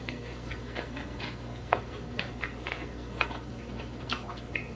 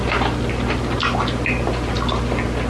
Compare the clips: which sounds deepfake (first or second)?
first